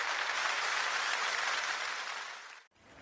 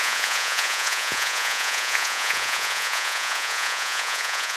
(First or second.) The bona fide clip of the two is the first